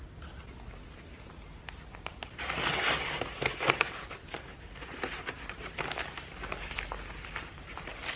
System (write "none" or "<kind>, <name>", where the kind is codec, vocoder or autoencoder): none